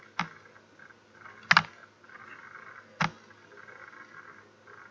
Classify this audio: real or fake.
real